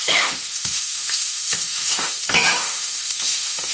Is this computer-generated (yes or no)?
yes